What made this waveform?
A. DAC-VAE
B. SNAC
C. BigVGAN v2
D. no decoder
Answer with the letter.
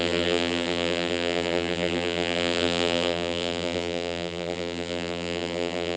C